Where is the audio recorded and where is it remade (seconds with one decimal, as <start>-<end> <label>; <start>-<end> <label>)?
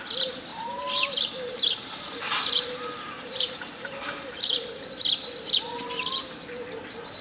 0.0-0.5 recorded; 0.5-4.8 remade; 4.8-7.2 recorded